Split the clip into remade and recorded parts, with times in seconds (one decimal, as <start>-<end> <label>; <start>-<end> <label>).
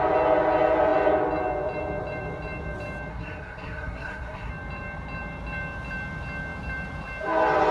0.0-3.1 recorded; 3.1-4.5 remade; 4.5-7.7 recorded